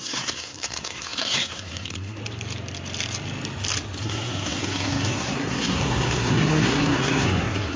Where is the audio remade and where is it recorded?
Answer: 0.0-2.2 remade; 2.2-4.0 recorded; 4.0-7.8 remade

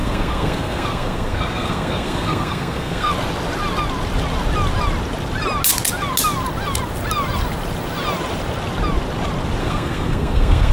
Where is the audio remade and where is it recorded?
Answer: 0.0-3.1 remade; 3.1-9.6 recorded; 9.6-10.7 remade

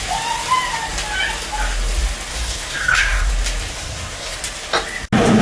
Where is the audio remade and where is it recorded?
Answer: 0.0-2.3 recorded; 2.3-3.3 remade; 3.3-3.7 recorded; 3.7-4.4 remade; 4.4-5.4 recorded

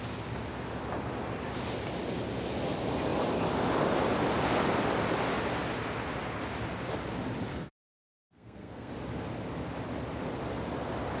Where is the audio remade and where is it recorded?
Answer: 0.0-7.5 recorded; 7.5-8.9 remade; 8.9-11.2 recorded

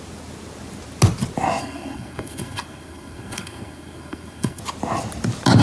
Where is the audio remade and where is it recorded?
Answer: 0.0-1.6 recorded; 1.6-4.6 remade; 4.6-5.6 recorded

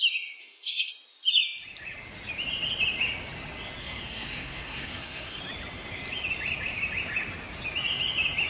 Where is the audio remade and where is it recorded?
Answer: 0.0-0.4 recorded; 0.4-0.9 remade; 0.9-3.8 recorded; 3.8-5.4 remade; 5.4-8.5 recorded

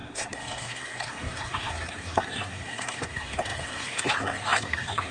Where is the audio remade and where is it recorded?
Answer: 0.0-5.1 remade

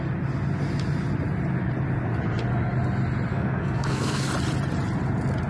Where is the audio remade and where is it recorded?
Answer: 0.0-3.3 recorded; 3.3-4.3 remade; 4.3-5.5 recorded